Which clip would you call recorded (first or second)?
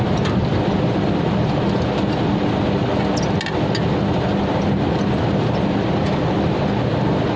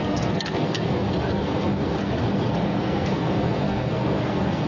first